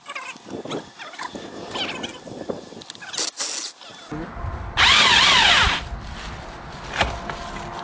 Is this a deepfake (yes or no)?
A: no